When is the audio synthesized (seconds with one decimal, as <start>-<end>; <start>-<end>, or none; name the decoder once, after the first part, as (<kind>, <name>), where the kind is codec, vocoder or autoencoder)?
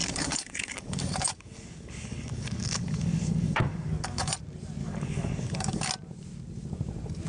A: 0.0-4.3 (codec, DAC); 4.8-5.9